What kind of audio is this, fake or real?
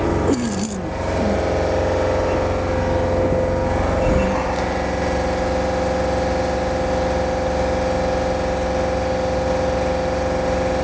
real